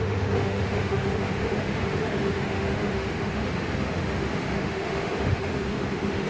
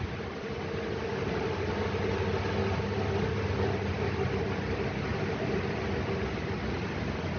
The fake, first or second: first